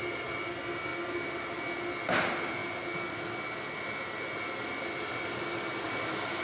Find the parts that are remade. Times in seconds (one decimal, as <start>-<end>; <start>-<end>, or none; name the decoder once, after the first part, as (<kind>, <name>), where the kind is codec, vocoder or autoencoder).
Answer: none